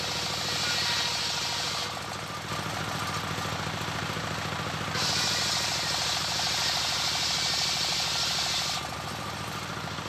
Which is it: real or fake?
real